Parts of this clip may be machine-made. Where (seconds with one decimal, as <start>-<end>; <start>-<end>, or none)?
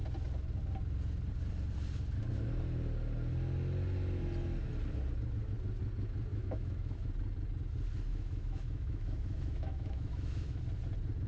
6.3-7.1; 8.1-10.6